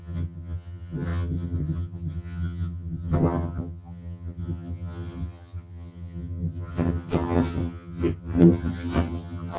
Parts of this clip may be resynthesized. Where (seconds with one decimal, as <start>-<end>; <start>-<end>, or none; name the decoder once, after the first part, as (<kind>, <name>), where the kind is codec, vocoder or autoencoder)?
0.0-9.6 (vocoder, HiFi-GAN)